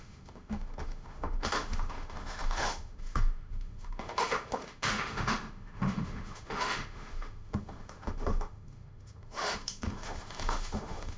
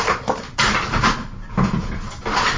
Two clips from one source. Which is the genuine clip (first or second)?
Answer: second